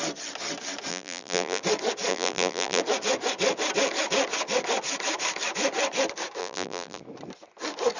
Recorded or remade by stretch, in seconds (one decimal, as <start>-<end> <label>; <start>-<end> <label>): 0.0-0.9 recorded; 0.9-1.6 remade; 1.6-2.1 recorded; 2.1-2.8 remade; 2.8-6.4 recorded; 6.4-7.0 remade; 7.0-8.0 recorded